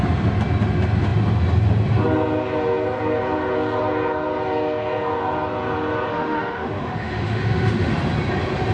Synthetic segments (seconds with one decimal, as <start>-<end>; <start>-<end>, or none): 6.1-7.9